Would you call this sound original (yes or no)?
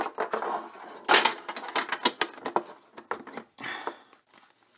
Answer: yes